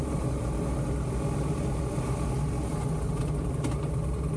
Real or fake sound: real